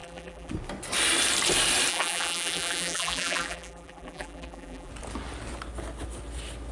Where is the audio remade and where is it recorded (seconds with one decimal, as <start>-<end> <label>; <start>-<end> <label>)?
0.0-0.5 remade; 0.5-1.9 recorded; 1.9-4.9 remade; 4.9-6.7 recorded